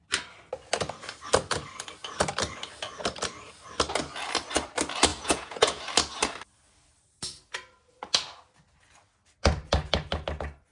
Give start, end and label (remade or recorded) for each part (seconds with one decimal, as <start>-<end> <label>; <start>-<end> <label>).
0.0-5.1 recorded; 5.1-5.8 remade; 5.8-10.7 recorded